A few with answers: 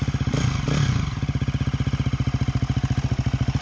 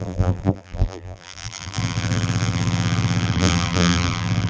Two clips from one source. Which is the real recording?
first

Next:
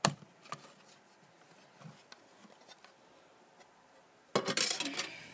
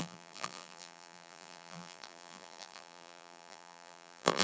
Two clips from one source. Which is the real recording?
first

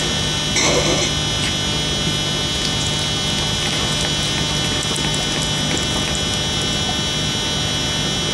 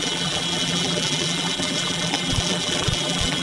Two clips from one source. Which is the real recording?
first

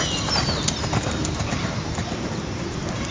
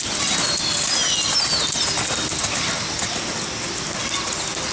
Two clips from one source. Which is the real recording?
second